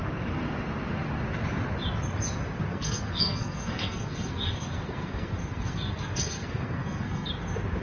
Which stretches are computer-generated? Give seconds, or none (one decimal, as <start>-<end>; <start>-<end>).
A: 2.7-7.3